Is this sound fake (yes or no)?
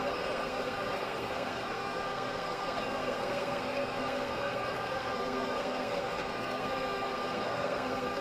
yes